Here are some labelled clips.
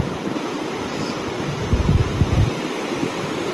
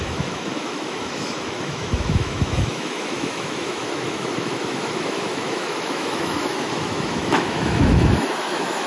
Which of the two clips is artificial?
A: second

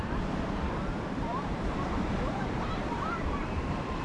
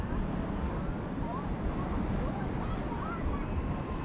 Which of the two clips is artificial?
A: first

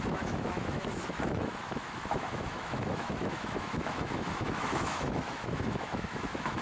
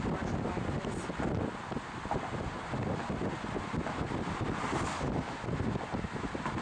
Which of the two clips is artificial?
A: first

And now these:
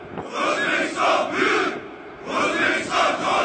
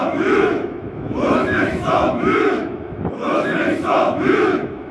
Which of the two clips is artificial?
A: second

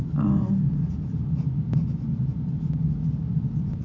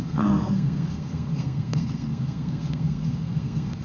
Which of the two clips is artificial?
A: second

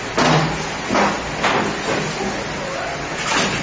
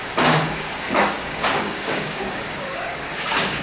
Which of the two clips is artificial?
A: second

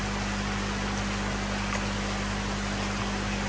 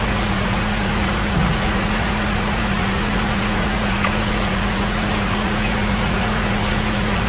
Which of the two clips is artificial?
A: second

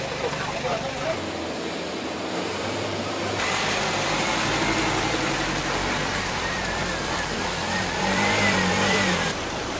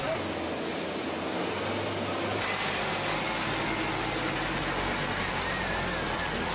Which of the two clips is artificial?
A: first